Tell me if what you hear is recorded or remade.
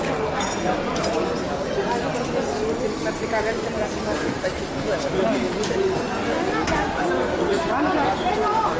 recorded